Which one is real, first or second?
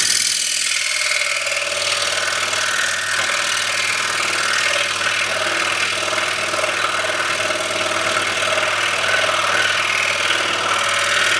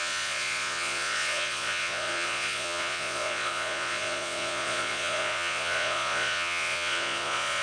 first